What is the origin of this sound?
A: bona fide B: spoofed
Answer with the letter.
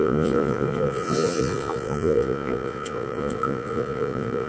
B